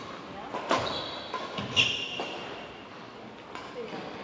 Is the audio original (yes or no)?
yes